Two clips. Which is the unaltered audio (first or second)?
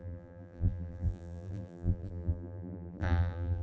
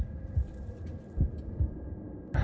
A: second